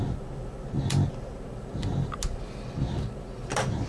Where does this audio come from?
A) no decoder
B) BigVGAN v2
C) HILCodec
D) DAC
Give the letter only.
A